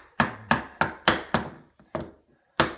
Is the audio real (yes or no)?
yes